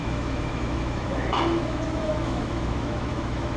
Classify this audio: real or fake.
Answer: fake